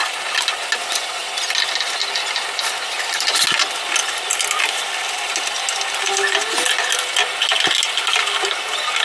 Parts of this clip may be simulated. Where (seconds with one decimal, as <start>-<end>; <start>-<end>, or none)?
none